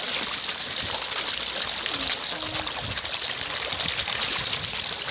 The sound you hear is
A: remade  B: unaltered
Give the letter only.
B